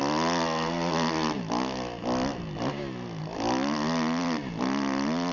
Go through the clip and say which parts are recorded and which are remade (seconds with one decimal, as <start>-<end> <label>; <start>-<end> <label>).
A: 0.0-5.3 recorded